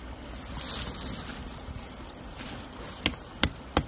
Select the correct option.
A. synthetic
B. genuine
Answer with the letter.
B